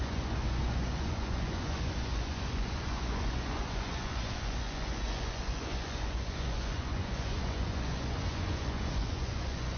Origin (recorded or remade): remade